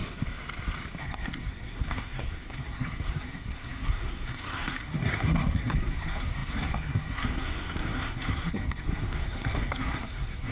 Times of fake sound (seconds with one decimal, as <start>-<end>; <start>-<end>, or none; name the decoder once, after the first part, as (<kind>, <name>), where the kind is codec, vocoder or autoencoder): 1.0-10.5 (codec, SNAC)